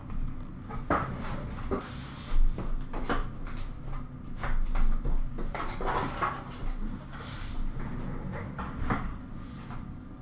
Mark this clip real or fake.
real